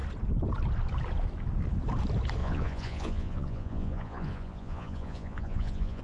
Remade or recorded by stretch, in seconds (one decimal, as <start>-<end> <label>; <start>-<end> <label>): 0.0-2.4 recorded; 2.4-6.0 remade